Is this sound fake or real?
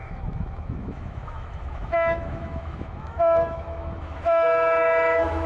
fake